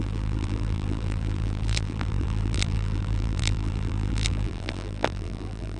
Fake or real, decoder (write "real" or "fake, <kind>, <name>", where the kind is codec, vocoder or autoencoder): fake, vocoder, BigVGAN v2